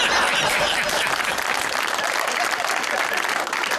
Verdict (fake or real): real